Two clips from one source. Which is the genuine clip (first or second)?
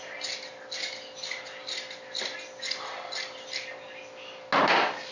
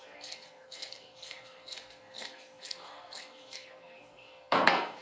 first